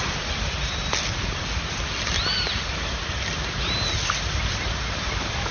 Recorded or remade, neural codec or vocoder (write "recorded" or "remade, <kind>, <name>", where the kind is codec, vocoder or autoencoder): recorded